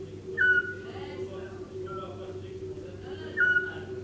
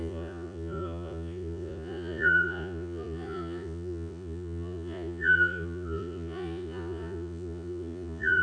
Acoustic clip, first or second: first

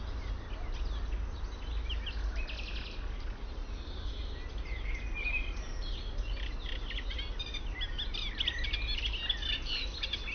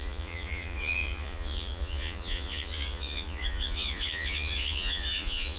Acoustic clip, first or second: first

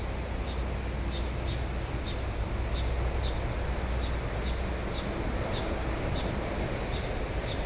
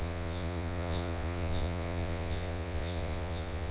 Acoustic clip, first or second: first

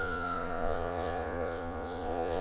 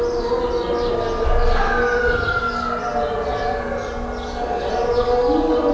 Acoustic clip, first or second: second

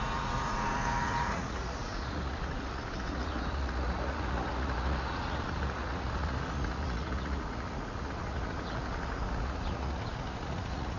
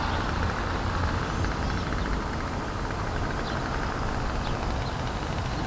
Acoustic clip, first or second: second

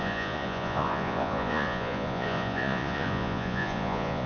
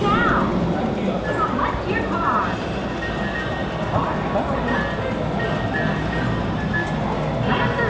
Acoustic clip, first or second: second